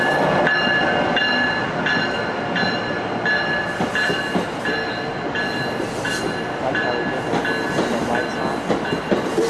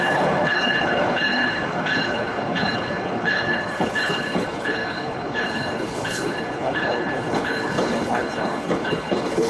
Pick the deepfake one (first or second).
second